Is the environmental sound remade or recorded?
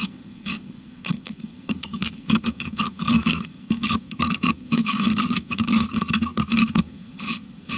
remade